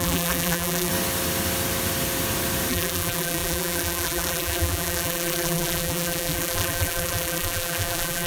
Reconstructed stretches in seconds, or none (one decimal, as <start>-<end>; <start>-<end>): 0.0-0.9; 2.7-8.3